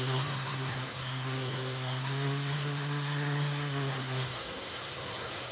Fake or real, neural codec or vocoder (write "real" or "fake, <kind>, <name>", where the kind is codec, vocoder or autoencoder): fake, codec, SNAC